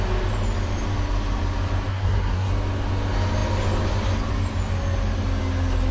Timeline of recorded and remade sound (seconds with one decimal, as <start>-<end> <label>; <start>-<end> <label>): 0.0-1.9 recorded; 1.9-2.5 remade; 2.5-5.9 recorded